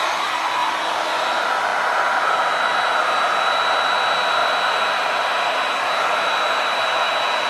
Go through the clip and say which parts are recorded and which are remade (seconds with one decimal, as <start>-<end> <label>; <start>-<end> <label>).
0.0-0.6 recorded; 0.6-1.1 remade; 1.1-4.4 recorded; 4.4-7.1 remade; 7.1-7.5 recorded